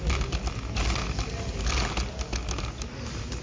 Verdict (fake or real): real